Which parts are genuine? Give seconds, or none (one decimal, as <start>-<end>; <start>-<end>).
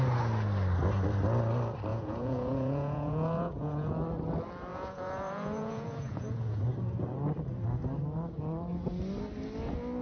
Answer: 0.0-1.9; 3.9-4.7; 6.6-10.0